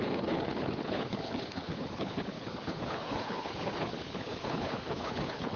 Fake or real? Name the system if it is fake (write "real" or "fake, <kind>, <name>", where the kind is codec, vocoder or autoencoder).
fake, codec, HILCodec